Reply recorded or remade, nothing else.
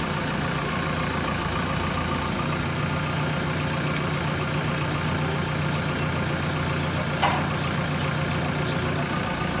recorded